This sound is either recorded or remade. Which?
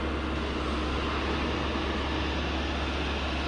recorded